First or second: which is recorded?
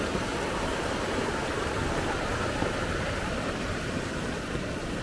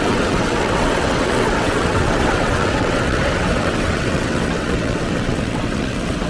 first